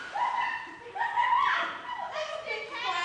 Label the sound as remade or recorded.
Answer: recorded